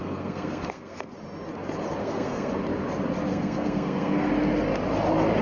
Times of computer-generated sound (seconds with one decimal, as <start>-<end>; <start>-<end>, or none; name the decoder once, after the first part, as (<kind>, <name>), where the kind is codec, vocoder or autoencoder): 0.0-1.1 (codec, SNAC); 2.0-2.5; 3.3-4.3